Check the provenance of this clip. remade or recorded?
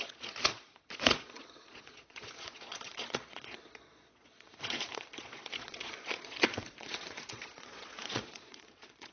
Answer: remade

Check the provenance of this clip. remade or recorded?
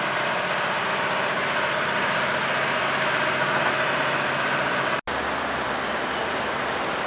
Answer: recorded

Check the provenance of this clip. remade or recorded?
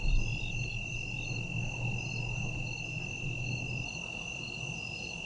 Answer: recorded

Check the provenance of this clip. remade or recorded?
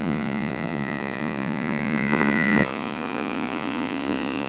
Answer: remade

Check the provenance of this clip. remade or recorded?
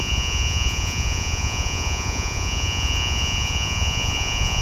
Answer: remade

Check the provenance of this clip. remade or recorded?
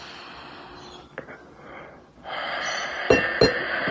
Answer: recorded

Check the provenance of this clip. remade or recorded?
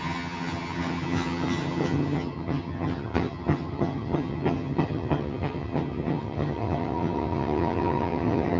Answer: remade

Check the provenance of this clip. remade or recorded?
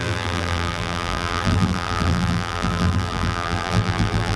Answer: remade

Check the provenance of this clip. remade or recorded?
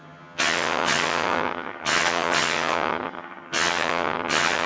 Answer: remade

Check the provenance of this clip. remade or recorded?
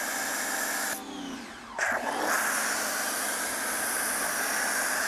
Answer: recorded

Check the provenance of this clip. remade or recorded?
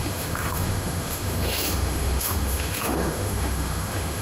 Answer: remade